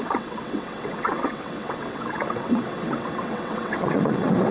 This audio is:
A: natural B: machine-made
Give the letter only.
B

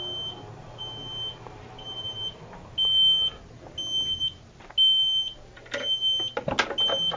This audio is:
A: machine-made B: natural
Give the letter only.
B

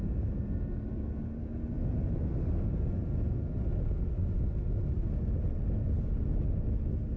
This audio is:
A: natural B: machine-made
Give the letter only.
A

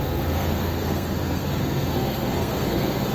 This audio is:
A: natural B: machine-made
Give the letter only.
B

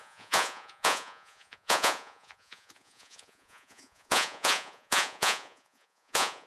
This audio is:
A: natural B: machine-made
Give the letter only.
B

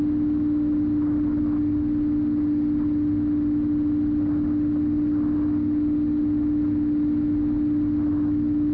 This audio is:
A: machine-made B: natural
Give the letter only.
B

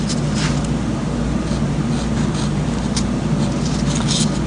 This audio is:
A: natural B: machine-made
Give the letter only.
A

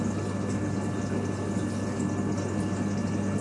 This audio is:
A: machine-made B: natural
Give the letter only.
B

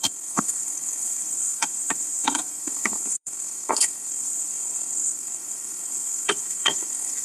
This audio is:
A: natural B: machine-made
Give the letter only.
B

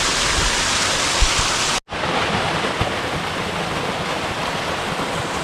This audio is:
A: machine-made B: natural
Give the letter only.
B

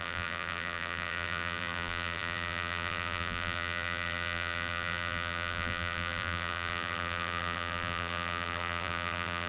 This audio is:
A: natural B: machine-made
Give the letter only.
B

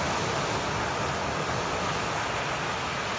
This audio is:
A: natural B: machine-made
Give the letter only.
A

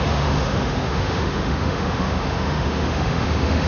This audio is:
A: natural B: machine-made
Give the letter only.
B